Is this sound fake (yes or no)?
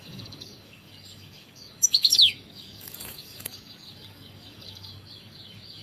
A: yes